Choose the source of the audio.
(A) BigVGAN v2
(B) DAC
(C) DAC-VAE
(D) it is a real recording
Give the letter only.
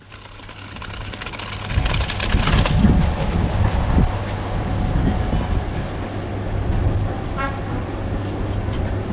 D